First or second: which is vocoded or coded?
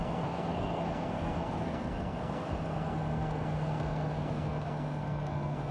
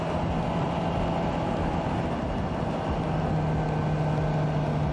first